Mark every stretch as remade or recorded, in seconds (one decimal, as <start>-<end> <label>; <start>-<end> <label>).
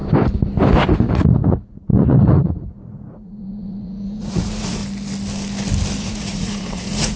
0.0-1.1 recorded; 1.1-4.8 remade; 4.8-6.0 recorded; 6.0-7.2 remade